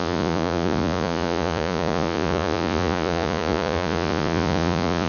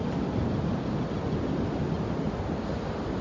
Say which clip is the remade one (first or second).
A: first